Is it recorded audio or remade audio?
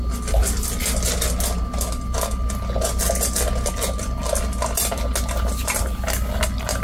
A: recorded